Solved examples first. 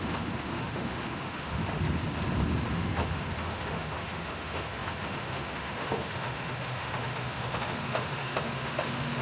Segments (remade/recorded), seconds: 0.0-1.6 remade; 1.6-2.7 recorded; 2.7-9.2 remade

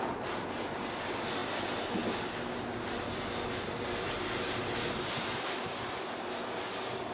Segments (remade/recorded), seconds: 0.0-7.1 recorded

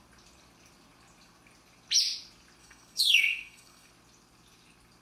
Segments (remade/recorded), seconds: 0.0-2.6 recorded; 2.6-3.9 remade; 3.9-5.0 recorded